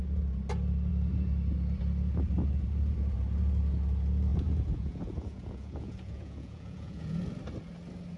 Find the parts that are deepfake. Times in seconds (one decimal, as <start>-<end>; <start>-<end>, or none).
4.3-7.2